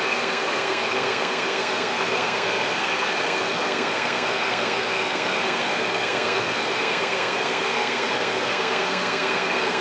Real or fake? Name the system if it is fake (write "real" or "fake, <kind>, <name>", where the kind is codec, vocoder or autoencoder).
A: fake, codec, SNAC